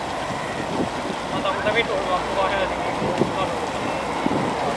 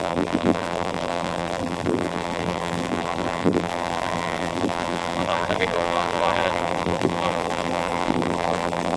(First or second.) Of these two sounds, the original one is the first